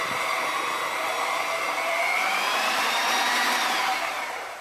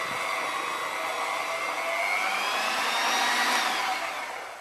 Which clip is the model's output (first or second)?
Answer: first